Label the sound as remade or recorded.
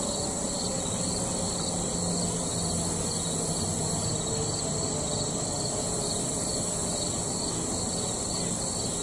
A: recorded